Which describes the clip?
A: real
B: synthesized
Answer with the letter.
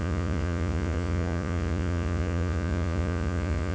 B